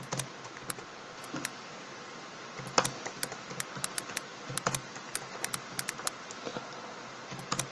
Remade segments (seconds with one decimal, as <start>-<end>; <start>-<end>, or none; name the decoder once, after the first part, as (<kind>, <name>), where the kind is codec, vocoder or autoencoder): none